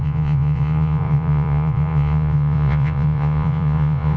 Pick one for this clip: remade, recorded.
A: remade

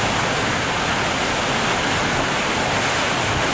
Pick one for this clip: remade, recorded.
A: recorded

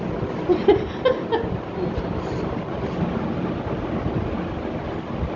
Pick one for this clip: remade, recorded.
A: recorded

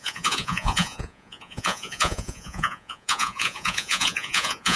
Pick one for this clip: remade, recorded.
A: remade